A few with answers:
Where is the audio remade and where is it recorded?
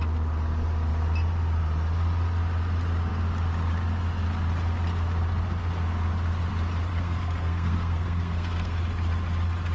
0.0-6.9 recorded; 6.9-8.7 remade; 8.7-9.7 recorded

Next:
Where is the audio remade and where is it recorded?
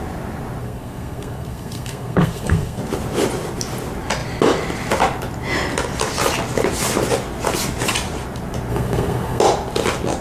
0.0-0.6 recorded; 0.6-2.8 remade; 2.8-8.7 recorded; 8.7-9.4 remade; 9.4-10.2 recorded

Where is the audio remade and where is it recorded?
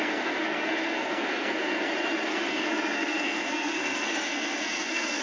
0.0-1.9 remade; 1.9-2.3 recorded; 2.3-5.2 remade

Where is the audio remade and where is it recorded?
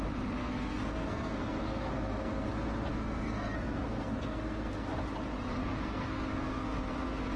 0.0-0.4 recorded; 0.4-2.5 remade; 2.5-2.9 recorded; 2.9-4.9 remade; 4.9-5.6 recorded; 5.6-7.4 remade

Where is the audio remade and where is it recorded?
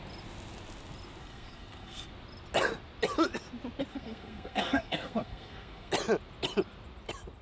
0.0-1.2 recorded; 1.2-2.1 remade; 2.1-3.9 recorded; 3.9-5.9 remade; 5.9-7.4 recorded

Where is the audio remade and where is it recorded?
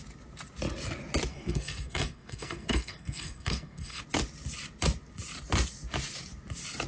0.0-1.3 recorded; 1.3-4.0 remade; 4.0-6.9 recorded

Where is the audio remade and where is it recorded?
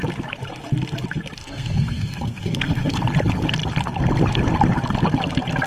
0.0-1.4 recorded; 1.4-3.0 remade; 3.0-5.7 recorded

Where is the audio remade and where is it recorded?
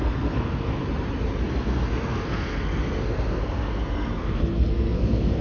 0.0-0.8 remade; 0.8-1.5 recorded; 1.5-5.4 remade